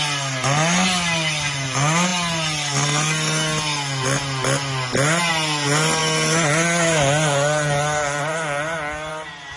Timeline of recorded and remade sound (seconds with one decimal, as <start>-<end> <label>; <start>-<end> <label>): 0.0-9.6 recorded